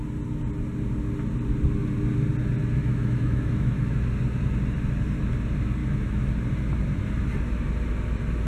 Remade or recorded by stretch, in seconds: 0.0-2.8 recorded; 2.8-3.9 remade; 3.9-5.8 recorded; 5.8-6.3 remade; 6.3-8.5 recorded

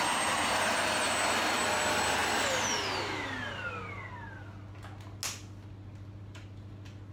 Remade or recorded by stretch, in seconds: 0.0-7.1 recorded

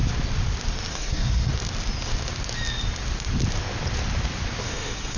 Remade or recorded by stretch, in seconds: 0.0-0.9 recorded; 0.9-1.5 remade; 1.5-4.6 recorded; 4.6-5.2 remade

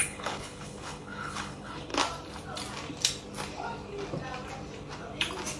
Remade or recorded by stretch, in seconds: 0.0-1.9 remade; 1.9-5.6 recorded

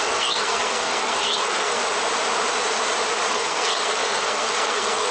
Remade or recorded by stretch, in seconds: 0.0-1.8 remade; 1.8-3.3 recorded; 3.3-5.1 remade